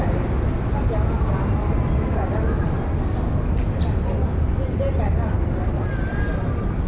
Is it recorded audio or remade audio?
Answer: recorded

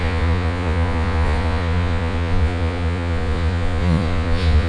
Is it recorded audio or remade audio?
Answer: remade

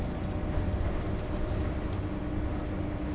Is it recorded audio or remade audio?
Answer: recorded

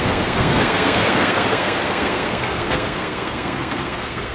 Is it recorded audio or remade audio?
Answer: remade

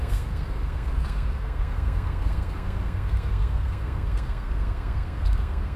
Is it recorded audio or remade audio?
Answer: remade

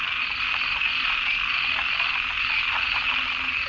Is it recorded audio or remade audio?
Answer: recorded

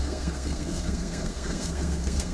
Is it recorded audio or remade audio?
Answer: remade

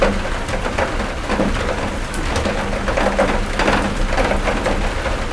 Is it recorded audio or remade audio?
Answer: recorded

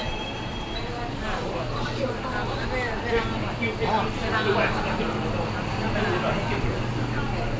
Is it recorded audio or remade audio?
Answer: recorded